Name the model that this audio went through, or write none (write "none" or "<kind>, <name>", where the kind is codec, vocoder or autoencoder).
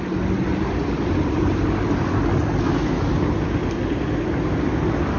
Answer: none